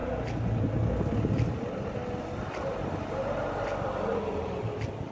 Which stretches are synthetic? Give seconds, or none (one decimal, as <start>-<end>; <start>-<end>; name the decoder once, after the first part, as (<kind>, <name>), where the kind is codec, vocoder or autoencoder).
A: none